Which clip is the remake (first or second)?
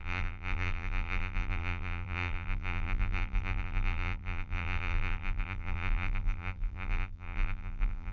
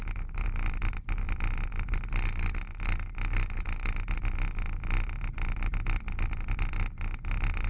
first